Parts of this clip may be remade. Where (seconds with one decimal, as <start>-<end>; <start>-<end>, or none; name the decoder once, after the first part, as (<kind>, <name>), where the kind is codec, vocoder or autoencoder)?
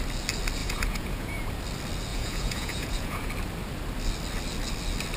0.6-1.5 (vocoder, Vocos); 2.1-3.3